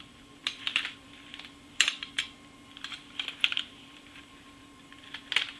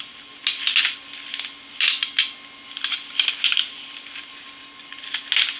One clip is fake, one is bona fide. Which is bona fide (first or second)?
second